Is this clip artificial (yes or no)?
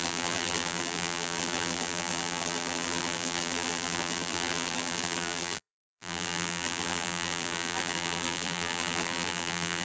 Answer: yes